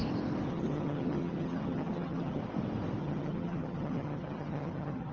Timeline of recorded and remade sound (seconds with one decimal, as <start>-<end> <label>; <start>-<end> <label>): 0.0-0.5 recorded; 0.5-2.4 remade; 2.4-3.0 recorded; 3.0-5.1 remade